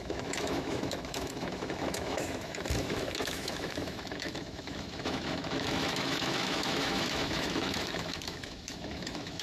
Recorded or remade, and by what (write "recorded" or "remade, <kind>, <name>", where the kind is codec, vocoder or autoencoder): remade, autoencoder, DAC-VAE